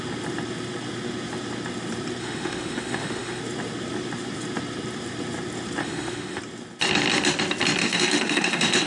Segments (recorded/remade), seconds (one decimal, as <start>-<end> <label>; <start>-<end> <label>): 0.0-2.2 recorded; 2.2-3.4 remade; 3.4-5.8 recorded; 5.8-6.4 remade; 6.4-7.8 recorded; 7.8-8.9 remade

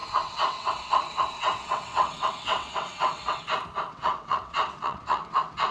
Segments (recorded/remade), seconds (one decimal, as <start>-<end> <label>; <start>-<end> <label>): 0.0-3.4 remade; 3.4-3.9 recorded; 3.9-5.7 remade

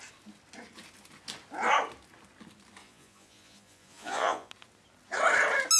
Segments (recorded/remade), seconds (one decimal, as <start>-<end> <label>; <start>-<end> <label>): 0.0-2.8 recorded; 2.8-4.5 remade; 4.5-5.8 recorded

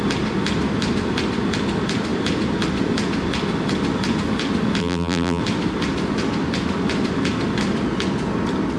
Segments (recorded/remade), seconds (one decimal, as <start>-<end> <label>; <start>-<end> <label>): 0.0-4.8 recorded; 4.8-5.4 remade; 5.4-8.8 recorded